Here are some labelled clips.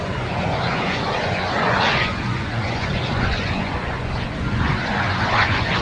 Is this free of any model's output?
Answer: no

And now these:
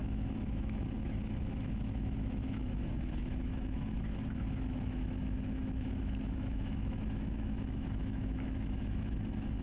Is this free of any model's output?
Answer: no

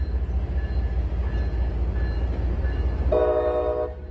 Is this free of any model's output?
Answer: yes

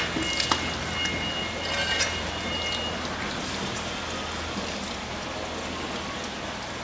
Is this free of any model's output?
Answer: yes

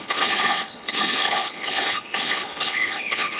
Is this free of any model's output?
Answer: no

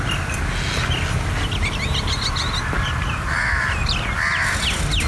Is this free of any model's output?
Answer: yes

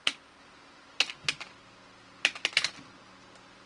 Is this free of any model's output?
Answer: yes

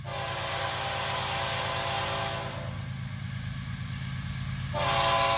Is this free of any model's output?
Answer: yes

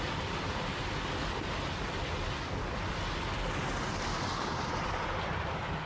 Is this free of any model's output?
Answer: yes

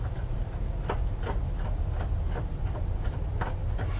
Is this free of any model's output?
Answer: yes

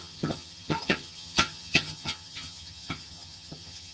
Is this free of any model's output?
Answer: no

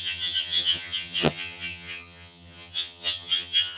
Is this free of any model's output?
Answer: no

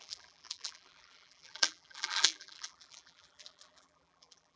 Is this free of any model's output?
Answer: no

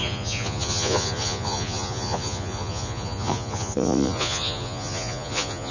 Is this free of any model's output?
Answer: no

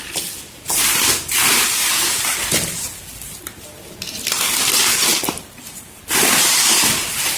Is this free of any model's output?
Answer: yes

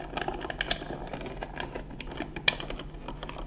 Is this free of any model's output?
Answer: yes